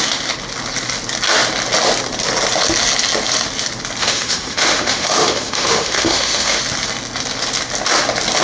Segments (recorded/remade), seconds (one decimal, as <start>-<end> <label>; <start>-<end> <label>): 0.0-4.0 recorded; 4.0-6.6 remade; 6.6-8.4 recorded